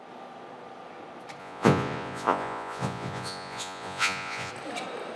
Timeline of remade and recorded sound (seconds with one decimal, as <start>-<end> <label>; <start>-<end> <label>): 0.0-1.4 recorded; 1.4-4.5 remade; 4.5-5.2 recorded